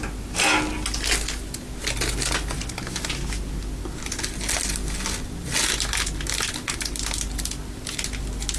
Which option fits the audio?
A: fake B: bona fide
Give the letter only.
B